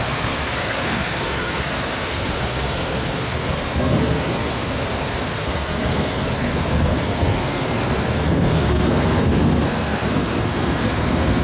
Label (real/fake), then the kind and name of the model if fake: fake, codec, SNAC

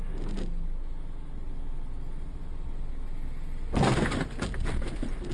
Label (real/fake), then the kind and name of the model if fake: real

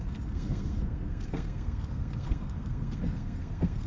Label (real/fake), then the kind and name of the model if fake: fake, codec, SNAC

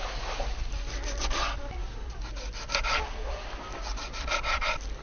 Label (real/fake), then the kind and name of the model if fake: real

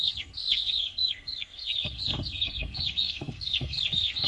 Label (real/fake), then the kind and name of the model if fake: fake, codec, SNAC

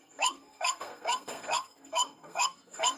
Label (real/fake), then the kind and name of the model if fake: fake, codec, SNAC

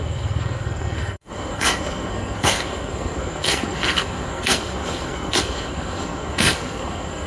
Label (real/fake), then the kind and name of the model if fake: fake, codec, SNAC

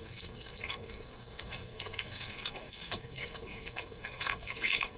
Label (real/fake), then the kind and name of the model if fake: fake, codec, SNAC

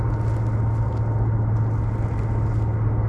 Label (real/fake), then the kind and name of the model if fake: real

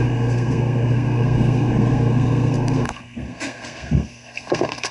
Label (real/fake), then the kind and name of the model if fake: fake, codec, SNAC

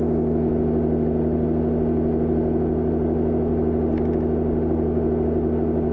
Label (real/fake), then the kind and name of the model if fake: real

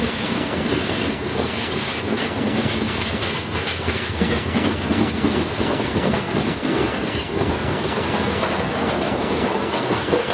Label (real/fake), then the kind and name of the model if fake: fake, codec, SNAC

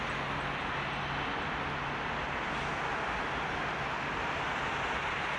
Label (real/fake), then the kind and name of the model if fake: real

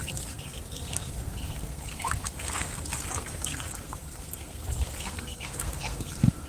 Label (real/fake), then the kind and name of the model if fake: fake, codec, SNAC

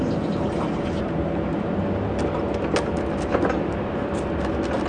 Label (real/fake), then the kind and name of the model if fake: real